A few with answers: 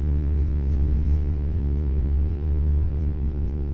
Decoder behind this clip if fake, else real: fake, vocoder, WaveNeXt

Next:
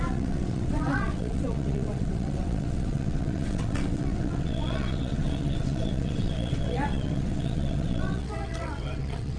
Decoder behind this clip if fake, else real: fake, vocoder, WaveNeXt